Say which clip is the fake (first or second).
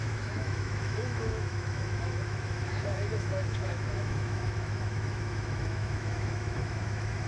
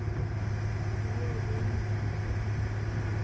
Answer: first